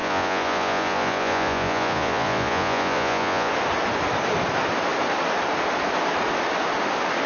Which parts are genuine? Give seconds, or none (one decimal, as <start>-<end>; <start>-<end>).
3.5-7.3